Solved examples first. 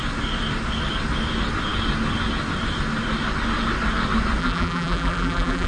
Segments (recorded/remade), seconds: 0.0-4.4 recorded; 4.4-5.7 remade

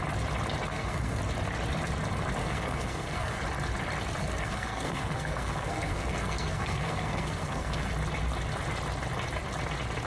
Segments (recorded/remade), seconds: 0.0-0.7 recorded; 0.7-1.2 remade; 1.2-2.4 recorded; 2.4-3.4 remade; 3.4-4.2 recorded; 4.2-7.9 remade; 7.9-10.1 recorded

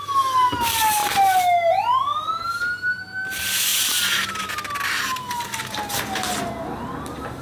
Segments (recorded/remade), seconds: 0.0-7.4 recorded